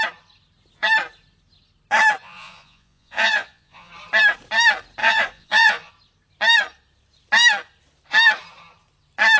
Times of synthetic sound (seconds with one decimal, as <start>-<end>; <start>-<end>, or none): 2.2-3.9; 5.0-5.9